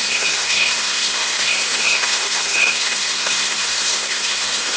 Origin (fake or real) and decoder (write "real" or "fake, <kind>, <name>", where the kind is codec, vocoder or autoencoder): fake, codec, SNAC